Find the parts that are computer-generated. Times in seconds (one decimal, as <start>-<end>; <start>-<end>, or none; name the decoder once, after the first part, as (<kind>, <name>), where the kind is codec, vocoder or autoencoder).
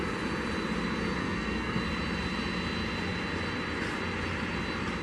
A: 1.2-1.8 (codec, SNAC)